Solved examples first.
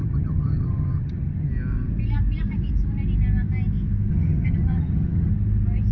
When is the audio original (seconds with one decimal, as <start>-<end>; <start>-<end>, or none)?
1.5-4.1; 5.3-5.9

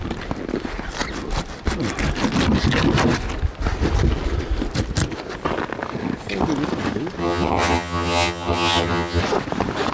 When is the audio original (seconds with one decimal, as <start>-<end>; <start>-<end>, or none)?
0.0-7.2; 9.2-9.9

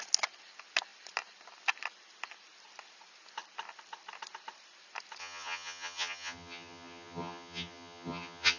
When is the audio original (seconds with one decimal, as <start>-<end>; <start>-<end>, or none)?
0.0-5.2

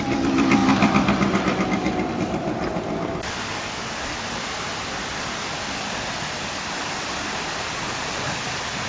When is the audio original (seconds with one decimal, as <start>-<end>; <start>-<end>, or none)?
0.0-8.9

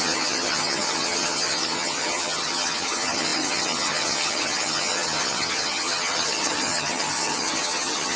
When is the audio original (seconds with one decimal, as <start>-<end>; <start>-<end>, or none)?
none